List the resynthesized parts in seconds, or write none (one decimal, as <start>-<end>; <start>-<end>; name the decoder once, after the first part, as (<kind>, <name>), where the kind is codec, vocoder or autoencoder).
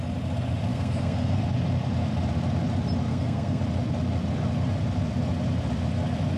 0.7-1.4 (codec, SNAC); 3.1-3.6